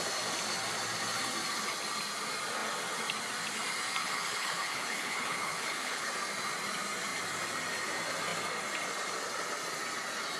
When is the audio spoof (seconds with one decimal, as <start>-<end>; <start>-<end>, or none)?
4.0-6.1